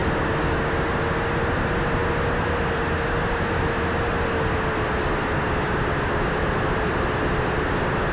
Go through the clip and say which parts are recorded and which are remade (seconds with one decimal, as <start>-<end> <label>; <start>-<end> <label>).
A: 0.0-8.1 recorded